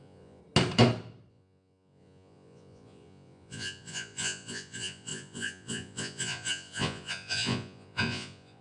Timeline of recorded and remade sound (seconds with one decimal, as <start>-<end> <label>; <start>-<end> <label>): 0.0-0.4 remade; 0.4-1.3 recorded; 1.3-8.6 remade